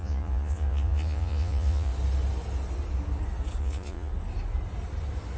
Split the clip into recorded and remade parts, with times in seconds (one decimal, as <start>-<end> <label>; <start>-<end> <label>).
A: 0.0-1.9 remade; 1.9-3.6 recorded; 3.6-4.1 remade; 4.1-5.4 recorded